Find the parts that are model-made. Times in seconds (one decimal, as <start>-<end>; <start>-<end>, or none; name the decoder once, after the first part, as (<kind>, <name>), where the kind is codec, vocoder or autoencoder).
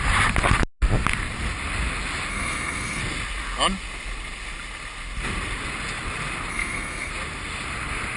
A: 2.3-3.0 (codec, SNAC); 6.5-7.1